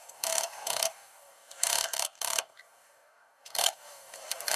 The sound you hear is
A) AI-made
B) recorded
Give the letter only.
A